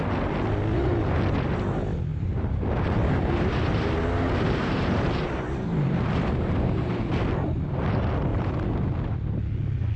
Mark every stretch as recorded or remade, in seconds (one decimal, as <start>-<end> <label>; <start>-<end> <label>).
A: 0.0-2.1 recorded; 2.1-7.1 remade; 7.1-8.3 recorded; 8.3-9.4 remade; 9.4-10.0 recorded